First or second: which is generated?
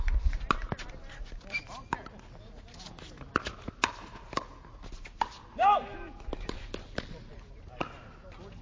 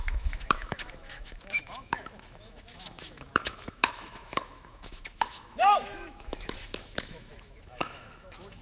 second